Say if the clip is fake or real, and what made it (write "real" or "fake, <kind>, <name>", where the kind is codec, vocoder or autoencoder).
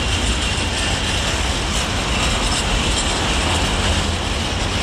real